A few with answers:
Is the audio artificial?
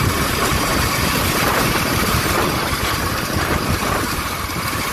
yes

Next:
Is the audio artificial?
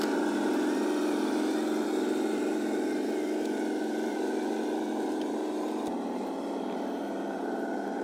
yes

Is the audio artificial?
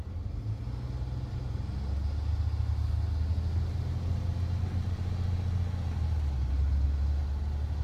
no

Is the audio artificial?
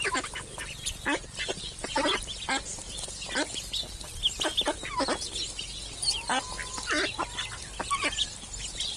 no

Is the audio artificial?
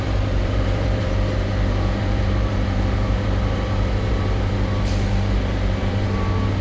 yes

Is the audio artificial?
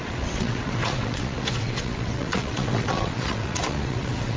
yes